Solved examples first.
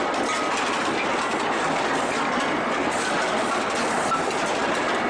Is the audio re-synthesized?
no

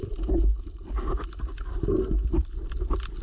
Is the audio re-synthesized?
no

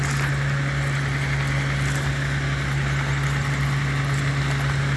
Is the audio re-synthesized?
no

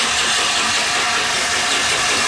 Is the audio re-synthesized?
no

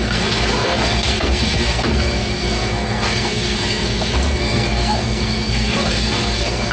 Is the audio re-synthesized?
yes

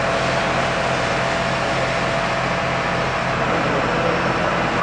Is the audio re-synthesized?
no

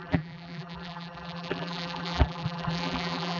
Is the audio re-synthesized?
yes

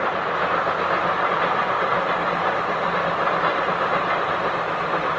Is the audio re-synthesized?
no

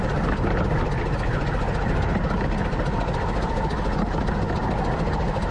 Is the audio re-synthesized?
no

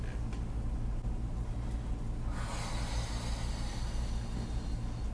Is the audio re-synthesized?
no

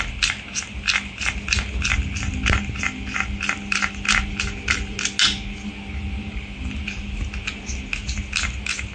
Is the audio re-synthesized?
no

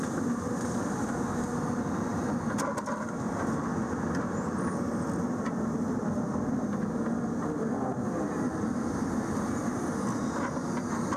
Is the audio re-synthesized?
no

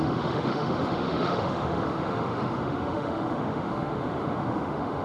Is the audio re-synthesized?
yes